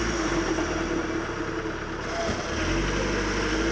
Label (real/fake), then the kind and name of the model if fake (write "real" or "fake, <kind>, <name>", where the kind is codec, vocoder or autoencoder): real